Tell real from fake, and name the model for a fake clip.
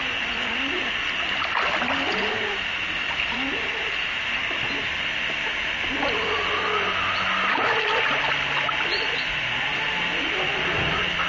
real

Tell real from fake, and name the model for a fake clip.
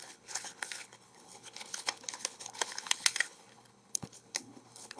fake, codec, HILCodec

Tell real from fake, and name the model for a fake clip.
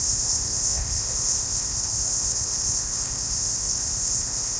fake, codec, ZipCodec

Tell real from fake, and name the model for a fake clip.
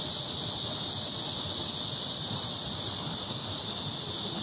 real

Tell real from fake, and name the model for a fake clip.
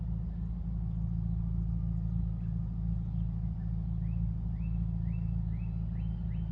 real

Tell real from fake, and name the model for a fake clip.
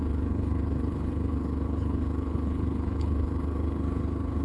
fake, codec, HILCodec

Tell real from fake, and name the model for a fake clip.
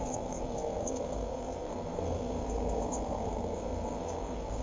fake, codec, SNAC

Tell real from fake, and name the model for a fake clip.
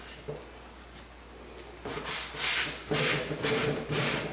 real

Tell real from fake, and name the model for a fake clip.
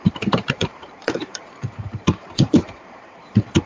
fake, vocoder, BigVGAN v2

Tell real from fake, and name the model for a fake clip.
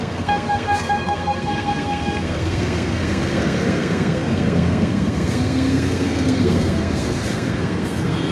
fake, codec, SNAC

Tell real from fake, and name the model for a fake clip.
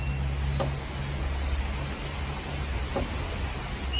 real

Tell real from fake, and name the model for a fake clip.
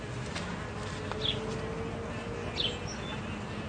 real